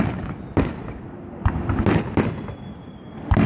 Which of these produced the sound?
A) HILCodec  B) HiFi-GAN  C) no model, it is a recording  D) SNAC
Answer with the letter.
C